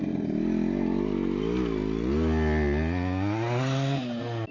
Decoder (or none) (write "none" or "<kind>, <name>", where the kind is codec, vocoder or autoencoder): none